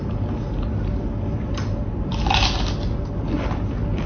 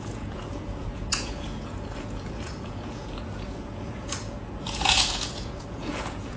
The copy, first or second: second